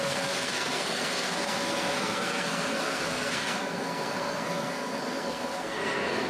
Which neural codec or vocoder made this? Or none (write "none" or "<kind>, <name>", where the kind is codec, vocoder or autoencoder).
codec, SNAC